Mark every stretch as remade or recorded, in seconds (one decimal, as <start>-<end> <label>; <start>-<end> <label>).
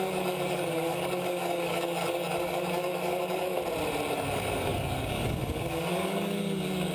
0.0-3.6 remade; 3.6-4.1 recorded; 4.1-6.9 remade